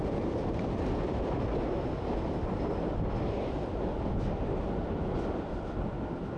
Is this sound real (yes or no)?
yes